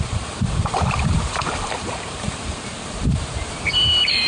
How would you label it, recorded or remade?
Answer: remade